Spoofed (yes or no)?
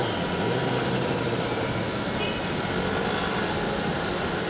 no